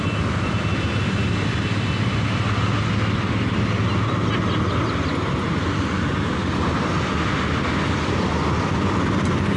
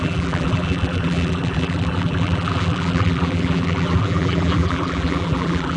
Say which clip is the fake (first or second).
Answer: second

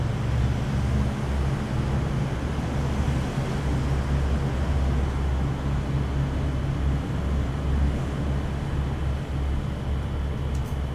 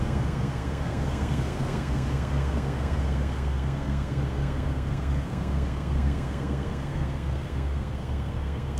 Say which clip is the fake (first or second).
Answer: second